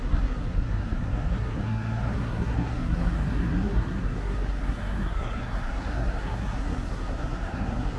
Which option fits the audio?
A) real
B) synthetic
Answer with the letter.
B